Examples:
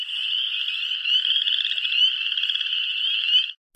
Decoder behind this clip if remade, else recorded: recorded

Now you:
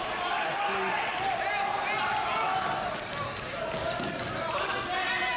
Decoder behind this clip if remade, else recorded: recorded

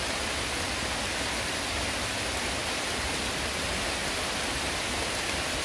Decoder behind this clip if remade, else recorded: recorded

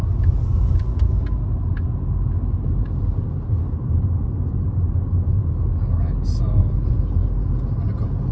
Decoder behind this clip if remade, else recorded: recorded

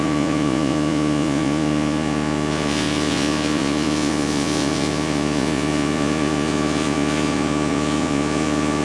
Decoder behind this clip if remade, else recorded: remade, vocoder, Vocos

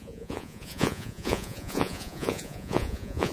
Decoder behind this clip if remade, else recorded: remade, vocoder, Vocos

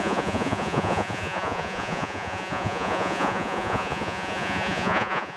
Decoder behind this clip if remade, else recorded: remade, vocoder, Vocos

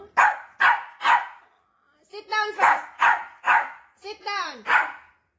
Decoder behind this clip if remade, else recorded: recorded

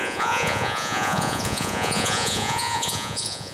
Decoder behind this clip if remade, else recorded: remade, vocoder, Vocos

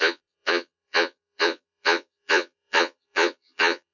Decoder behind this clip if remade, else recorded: remade, vocoder, Vocos